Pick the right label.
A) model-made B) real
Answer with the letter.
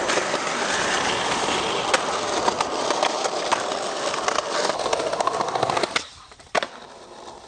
A